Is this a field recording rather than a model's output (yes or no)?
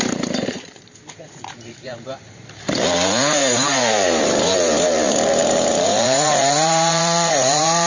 no